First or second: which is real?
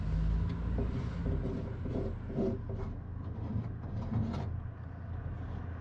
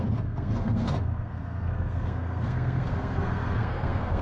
first